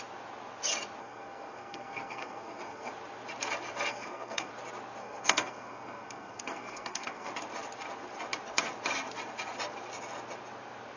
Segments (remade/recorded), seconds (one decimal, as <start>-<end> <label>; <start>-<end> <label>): 0.0-1.0 recorded; 1.0-2.9 remade; 2.9-3.9 recorded; 3.9-4.5 remade; 4.5-5.0 recorded; 5.0-7.3 remade; 7.3-11.0 recorded